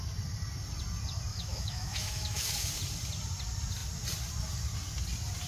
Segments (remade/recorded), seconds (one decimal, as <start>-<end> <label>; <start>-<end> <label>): 0.0-1.3 recorded; 1.3-2.7 remade; 2.7-5.5 recorded